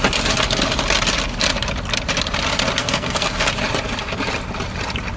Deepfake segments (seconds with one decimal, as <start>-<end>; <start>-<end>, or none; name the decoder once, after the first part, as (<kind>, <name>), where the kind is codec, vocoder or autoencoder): 2.8-3.5 (codec, SNAC)